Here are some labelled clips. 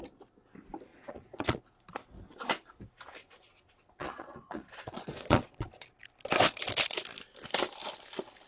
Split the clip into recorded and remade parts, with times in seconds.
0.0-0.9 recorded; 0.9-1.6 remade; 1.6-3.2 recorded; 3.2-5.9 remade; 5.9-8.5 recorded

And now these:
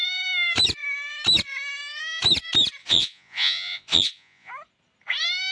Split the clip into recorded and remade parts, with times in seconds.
0.0-2.8 recorded; 2.8-4.5 remade; 4.5-5.5 recorded

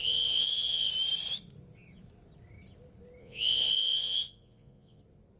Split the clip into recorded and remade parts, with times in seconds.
0.0-0.9 remade; 0.9-3.2 recorded; 3.2-5.0 remade; 5.0-5.4 recorded

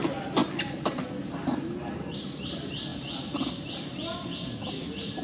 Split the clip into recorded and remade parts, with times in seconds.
0.0-5.2 recorded

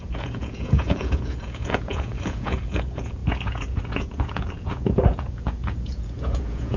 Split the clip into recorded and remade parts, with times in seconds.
0.0-6.8 remade

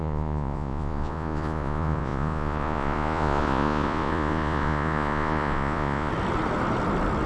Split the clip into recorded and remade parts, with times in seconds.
0.0-6.1 remade; 6.1-7.3 recorded

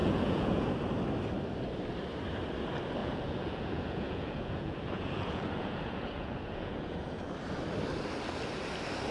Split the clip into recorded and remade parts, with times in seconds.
0.0-0.7 remade; 0.7-3.0 recorded; 3.0-7.3 remade; 7.3-9.1 recorded

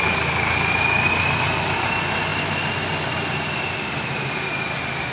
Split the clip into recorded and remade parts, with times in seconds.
0.0-5.1 recorded